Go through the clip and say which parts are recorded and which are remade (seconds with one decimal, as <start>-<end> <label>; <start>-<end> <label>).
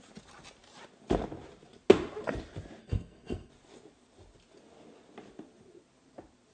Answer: 0.0-2.8 recorded; 2.8-3.5 remade; 3.5-6.5 recorded